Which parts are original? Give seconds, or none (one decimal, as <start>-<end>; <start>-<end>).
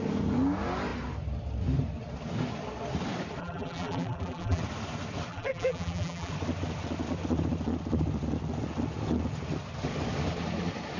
0.0-3.4; 4.6-5.3; 6.3-11.0